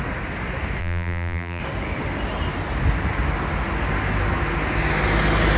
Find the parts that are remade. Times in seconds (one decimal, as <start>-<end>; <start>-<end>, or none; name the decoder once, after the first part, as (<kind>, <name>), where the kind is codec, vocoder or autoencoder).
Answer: 0.8-1.6 (vocoder, BigVGAN v2)